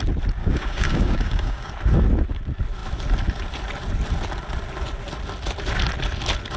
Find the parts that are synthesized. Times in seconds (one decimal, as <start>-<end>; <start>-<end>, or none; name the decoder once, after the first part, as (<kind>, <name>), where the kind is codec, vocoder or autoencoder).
0.4-1.7 (codec, DAC)